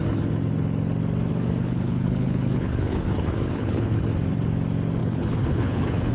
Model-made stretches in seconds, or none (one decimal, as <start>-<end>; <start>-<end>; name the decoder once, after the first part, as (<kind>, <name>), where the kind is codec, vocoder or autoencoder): 1.3-4.0 (codec, HILCodec); 5.0-6.1